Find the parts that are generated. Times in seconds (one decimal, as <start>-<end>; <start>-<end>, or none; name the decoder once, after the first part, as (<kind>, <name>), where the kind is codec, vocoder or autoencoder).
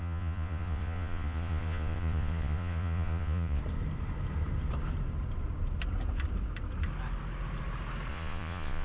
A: 0.0-3.6 (vocoder, Vocos); 8.1-8.8